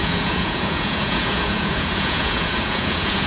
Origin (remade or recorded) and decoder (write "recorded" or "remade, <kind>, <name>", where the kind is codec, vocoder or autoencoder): remade, vocoder, Vocos